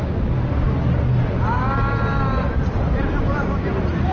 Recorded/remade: recorded